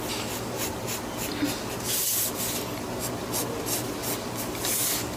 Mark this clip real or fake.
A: real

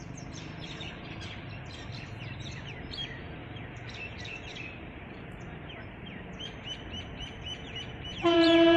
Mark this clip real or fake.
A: fake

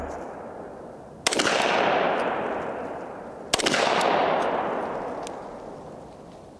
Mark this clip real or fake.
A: real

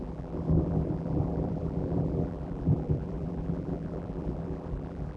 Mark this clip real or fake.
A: fake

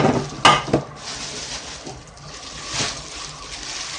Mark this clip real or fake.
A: real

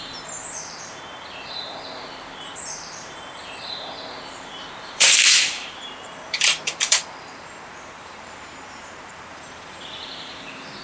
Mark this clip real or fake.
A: fake